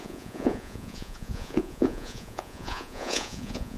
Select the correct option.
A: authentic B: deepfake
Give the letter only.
B